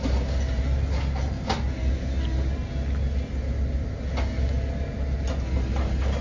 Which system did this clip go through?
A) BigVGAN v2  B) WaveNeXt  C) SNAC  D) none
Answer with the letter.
D